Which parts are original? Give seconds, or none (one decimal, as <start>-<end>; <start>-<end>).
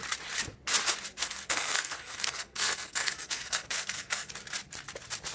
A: 0.0-1.2; 4.3-5.3